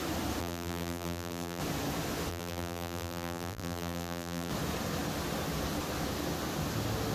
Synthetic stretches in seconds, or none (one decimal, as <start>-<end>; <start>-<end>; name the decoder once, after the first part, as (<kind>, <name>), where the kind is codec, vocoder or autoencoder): 0.4-1.6 (vocoder, BigVGAN v2); 2.3-4.5